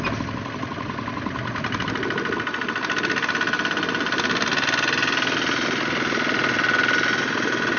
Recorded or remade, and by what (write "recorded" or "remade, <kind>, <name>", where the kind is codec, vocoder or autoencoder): recorded